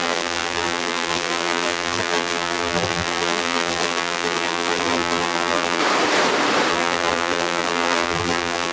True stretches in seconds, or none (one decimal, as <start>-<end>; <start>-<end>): 5.8-6.7